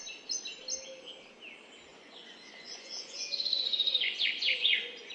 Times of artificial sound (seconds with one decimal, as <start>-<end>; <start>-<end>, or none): 1.9-5.1